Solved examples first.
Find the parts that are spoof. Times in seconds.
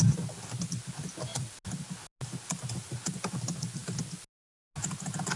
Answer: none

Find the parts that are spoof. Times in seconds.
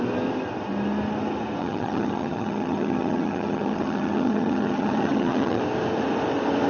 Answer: 1.6-5.6 (vocoder, HiFi-GAN)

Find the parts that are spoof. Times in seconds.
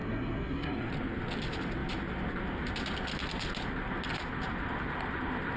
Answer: 0.0-0.9 (codec, SNAC)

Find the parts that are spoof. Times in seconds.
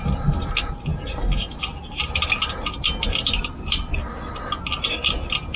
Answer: none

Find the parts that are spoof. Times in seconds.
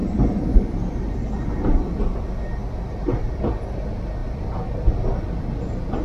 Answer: 0.0-3.6 (vocoder, BigVGAN v2); 4.2-6.0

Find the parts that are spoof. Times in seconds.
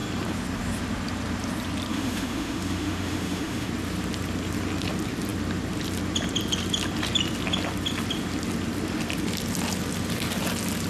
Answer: 1.9-3.7 (autoencoder, DAC-VAE)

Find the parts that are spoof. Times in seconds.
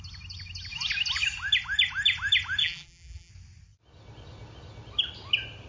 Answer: 2.6-3.3 (vocoder, BigVGAN v2)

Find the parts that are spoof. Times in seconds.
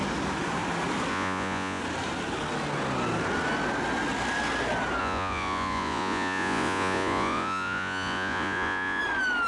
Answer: 1.1-1.8 (vocoder, Vocos); 5.0-9.0